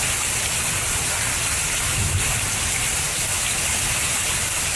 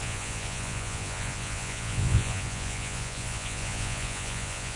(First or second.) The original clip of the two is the first